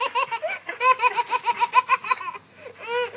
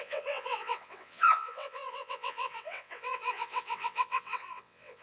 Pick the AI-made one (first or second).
second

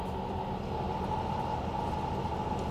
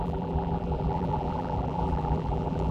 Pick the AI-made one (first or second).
second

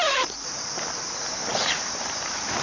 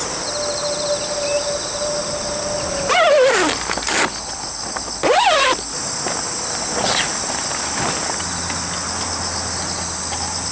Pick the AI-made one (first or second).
first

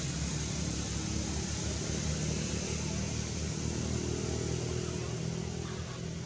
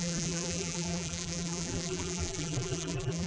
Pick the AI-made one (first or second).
second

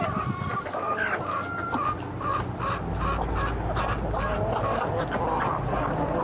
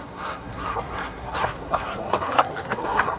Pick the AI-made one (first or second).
second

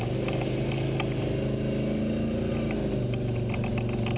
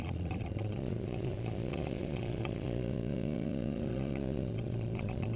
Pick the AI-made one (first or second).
second